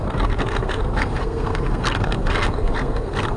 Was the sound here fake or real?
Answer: fake